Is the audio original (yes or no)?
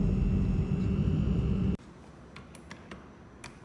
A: yes